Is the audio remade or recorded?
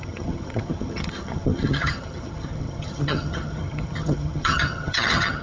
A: remade